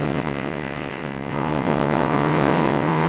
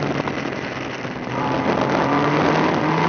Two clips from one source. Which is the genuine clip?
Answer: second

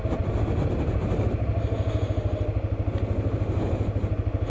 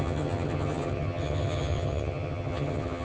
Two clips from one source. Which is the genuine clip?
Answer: first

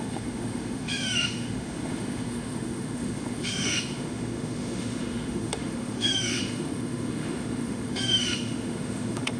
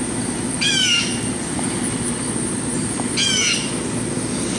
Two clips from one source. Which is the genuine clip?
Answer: second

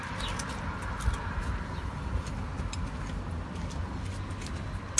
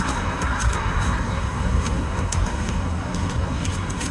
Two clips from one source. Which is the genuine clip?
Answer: first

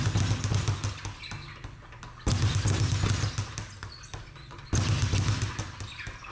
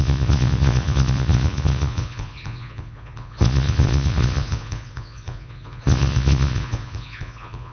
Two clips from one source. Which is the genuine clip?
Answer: first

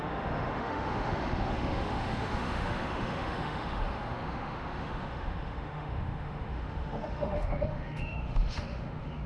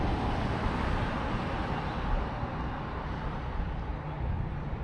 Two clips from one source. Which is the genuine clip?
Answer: second